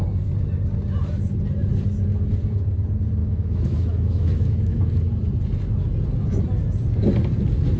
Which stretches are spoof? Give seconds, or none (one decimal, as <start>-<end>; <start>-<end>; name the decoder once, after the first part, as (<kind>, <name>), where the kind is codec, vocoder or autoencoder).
3.2-4.8 (autoencoder, DAC-VAE)